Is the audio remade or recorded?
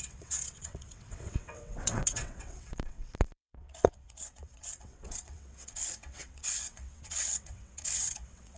remade